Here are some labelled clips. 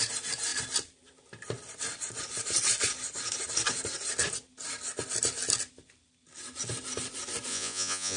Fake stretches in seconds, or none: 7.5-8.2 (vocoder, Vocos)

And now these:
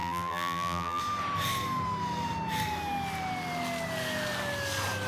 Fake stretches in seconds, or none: 0.0-1.0 (vocoder, BigVGAN v2)

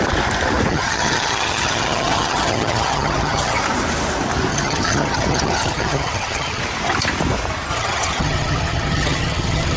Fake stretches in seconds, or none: 0.7-3.6 (vocoder, HiFi-GAN); 4.5-6.6; 7.7-9.8

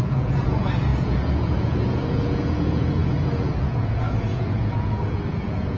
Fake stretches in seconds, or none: 0.0-5.8 (vocoder, Vocos)

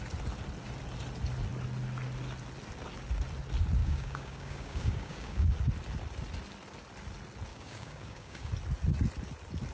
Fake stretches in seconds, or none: 3.8-5.5 (codec, DAC); 7.5-8.5

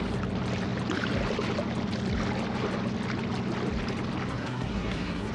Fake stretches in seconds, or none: 4.3-5.3 (codec, SNAC)

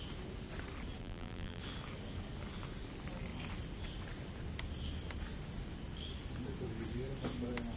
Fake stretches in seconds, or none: 1.0-1.6 (vocoder, BigVGAN v2)

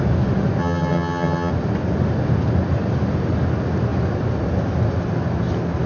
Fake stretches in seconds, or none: 0.6-1.5 (vocoder, HiFi-GAN)